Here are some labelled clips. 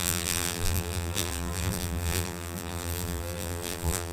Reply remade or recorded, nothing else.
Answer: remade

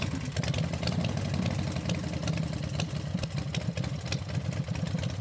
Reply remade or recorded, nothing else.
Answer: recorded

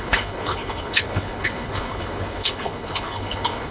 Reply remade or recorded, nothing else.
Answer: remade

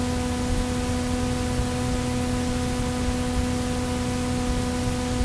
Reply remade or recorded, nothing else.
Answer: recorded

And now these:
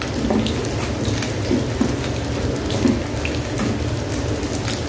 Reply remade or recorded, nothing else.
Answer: recorded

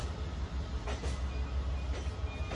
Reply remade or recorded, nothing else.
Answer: recorded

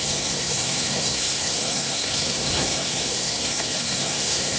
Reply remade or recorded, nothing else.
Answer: remade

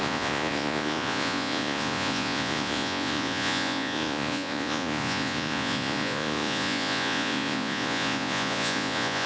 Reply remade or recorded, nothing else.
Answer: remade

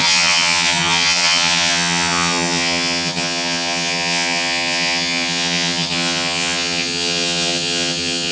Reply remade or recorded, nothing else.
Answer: remade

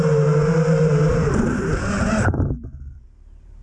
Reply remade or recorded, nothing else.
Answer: remade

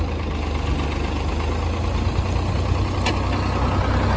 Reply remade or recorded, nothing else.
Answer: recorded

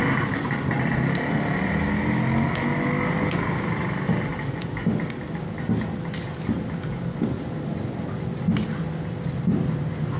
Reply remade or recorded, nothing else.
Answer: recorded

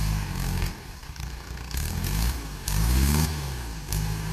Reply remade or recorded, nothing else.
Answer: remade